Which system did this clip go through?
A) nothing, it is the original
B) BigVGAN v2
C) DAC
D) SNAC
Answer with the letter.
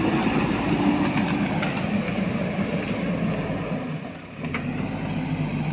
A